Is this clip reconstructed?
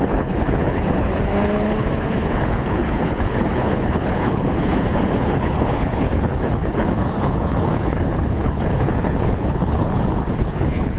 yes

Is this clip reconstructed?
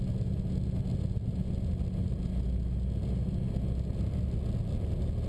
no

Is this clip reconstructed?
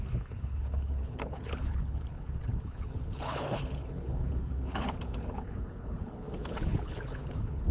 yes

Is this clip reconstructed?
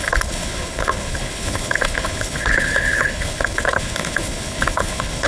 yes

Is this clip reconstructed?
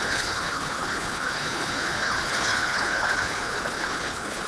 yes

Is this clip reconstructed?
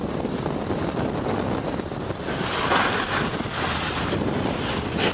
no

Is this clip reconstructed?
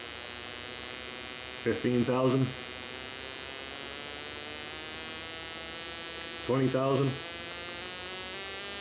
no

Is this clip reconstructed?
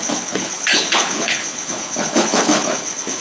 yes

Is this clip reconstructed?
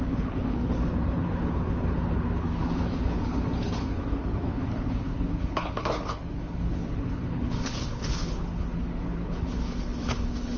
yes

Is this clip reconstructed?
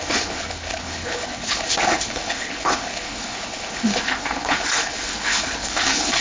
yes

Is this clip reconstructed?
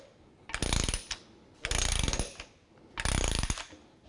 no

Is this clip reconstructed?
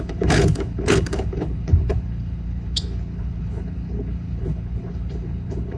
yes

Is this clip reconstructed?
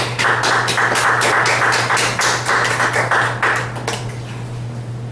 no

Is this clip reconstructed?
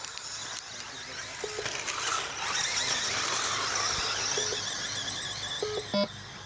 no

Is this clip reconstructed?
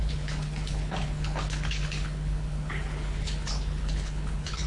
yes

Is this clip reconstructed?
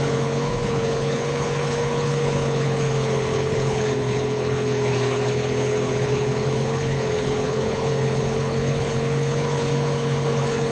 yes